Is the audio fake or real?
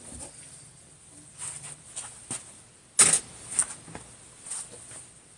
real